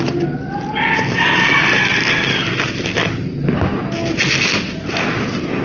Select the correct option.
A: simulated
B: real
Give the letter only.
B